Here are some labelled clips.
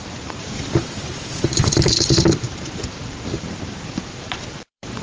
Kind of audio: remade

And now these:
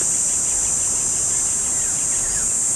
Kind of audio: recorded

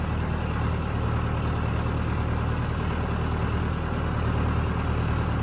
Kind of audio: recorded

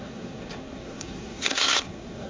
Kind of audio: remade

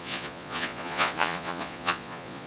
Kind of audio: remade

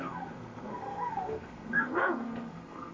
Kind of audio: remade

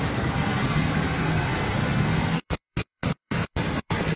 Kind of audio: remade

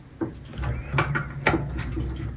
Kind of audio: recorded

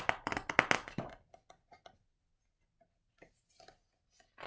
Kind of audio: recorded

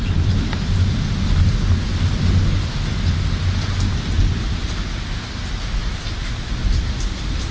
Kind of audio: recorded